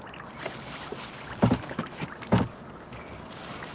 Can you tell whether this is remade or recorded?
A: recorded